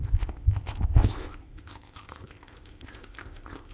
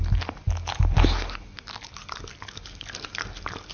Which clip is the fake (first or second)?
first